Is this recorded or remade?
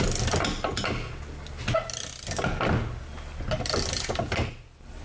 recorded